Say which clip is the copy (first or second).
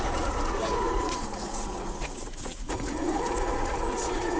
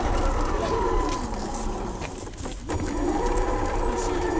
first